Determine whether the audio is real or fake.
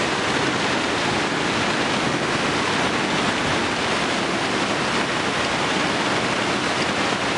real